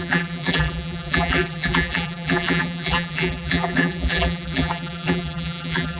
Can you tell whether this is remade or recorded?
remade